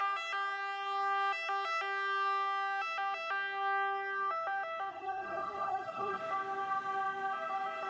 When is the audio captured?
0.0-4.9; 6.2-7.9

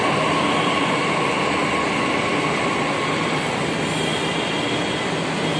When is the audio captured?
0.0-5.6

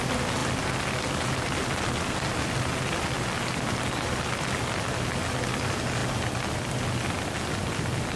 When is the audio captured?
0.0-8.2

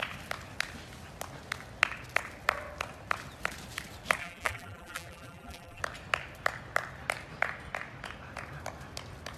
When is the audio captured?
0.0-4.2; 5.8-9.4

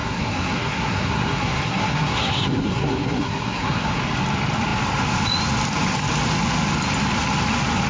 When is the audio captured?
4.0-7.9